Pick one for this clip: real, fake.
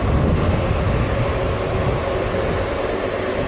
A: real